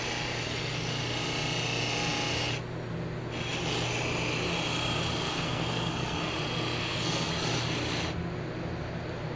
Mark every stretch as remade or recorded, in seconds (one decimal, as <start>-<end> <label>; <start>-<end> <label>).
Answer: 0.0-5.3 recorded; 5.3-6.3 remade; 6.3-6.8 recorded; 6.8-7.3 remade; 7.3-9.4 recorded